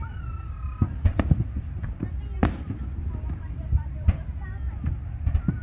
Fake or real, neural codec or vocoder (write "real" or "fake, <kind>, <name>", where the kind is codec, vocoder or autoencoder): real